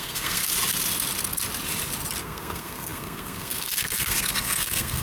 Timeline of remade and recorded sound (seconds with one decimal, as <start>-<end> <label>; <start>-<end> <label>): 0.0-0.4 remade; 0.4-2.2 recorded; 2.2-5.0 remade